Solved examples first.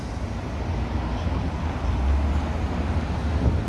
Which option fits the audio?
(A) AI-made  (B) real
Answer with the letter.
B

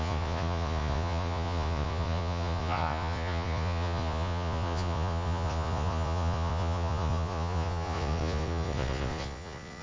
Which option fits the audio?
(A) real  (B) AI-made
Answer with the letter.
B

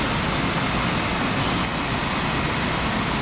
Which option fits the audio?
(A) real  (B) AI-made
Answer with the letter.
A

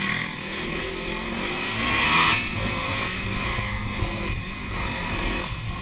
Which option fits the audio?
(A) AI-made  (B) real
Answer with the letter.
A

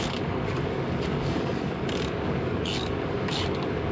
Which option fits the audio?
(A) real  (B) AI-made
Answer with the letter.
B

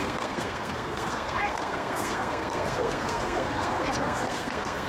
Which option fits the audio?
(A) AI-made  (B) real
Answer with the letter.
A